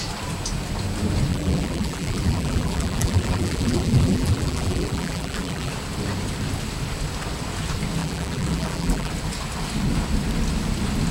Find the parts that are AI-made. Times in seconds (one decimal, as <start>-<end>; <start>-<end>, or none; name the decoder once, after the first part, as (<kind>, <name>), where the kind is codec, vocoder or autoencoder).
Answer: 1.3-5.7 (vocoder, BigVGAN v2); 8.0-9.1